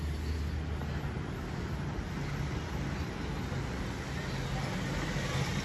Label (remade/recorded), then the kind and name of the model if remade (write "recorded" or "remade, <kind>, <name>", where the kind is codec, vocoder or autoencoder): recorded